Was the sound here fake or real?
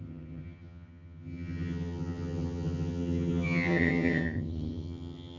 fake